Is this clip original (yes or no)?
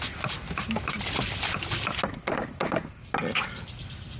yes